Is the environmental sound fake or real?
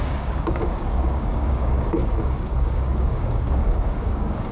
fake